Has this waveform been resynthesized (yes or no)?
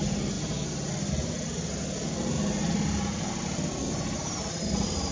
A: no